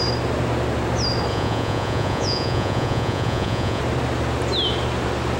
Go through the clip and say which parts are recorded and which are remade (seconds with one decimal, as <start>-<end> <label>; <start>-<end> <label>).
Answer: 0.0-1.3 recorded; 1.3-3.8 remade; 3.8-5.4 recorded